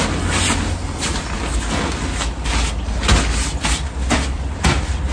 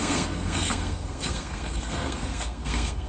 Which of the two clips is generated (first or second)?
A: second